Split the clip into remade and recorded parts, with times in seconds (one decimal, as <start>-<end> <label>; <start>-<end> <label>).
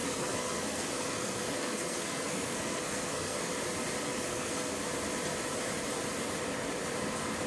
0.0-3.5 remade; 3.5-4.0 recorded; 4.0-4.8 remade; 4.8-7.5 recorded